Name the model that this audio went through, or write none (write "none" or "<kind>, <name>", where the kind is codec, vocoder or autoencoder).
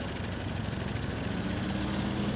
none